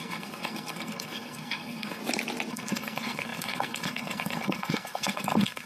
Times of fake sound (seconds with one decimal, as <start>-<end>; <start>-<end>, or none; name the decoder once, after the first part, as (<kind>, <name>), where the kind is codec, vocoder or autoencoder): 0.0-2.0 (codec, SNAC); 2.5-5.7